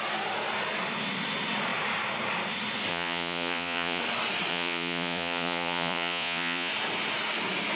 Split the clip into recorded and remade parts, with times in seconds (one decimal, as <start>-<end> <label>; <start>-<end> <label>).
0.0-2.9 recorded; 2.9-4.0 remade; 4.0-4.5 recorded; 4.5-6.7 remade; 6.7-7.8 recorded

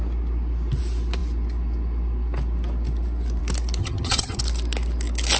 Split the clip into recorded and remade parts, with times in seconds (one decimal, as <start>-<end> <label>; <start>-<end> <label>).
0.0-3.8 recorded; 3.8-4.4 remade; 4.4-5.4 recorded

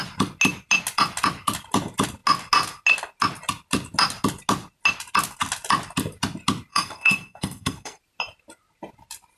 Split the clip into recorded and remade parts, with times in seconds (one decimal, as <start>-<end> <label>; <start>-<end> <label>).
0.0-6.7 recorded; 6.7-8.0 remade; 8.0-9.4 recorded

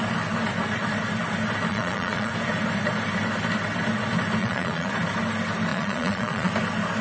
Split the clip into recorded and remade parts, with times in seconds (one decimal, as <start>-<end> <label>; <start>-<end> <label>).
0.0-1.7 recorded; 1.7-2.3 remade; 2.3-4.4 recorded; 4.4-4.9 remade; 4.9-5.7 recorded; 5.7-6.5 remade; 6.5-7.0 recorded